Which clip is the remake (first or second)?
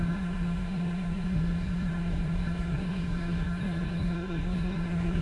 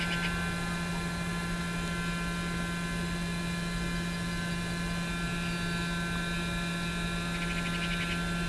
first